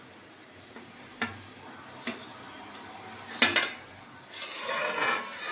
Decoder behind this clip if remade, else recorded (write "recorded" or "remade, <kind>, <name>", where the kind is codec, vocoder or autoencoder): recorded